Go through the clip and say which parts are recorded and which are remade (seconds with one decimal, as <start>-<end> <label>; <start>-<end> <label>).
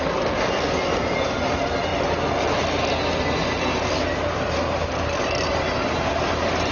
0.0-6.7 recorded